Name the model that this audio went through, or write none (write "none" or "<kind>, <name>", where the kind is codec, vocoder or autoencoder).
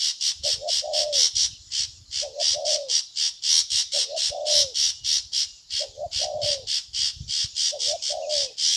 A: none